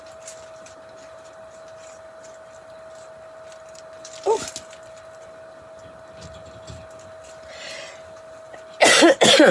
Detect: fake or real real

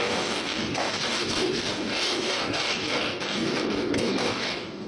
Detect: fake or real fake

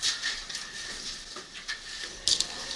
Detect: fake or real fake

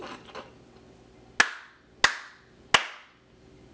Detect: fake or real real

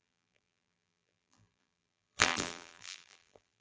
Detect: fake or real fake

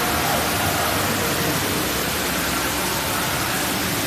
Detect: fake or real real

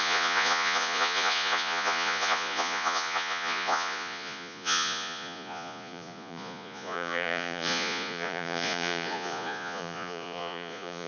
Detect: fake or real fake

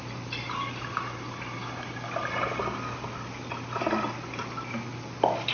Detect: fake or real real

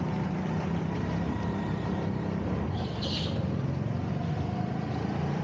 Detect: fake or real real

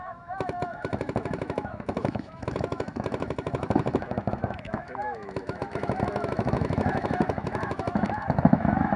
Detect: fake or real fake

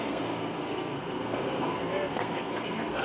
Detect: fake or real fake